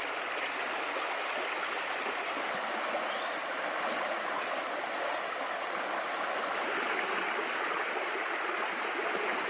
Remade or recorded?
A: recorded